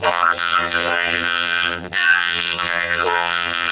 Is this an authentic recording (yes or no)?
no